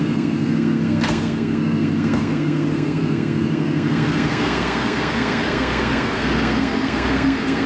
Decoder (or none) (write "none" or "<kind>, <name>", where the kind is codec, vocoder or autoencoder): codec, SNAC